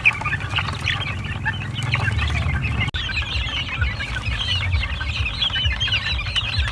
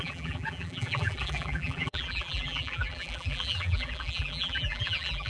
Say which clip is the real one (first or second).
first